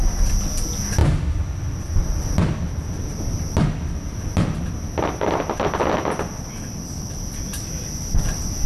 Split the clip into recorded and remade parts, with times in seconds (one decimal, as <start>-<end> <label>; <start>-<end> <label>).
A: 0.0-8.7 recorded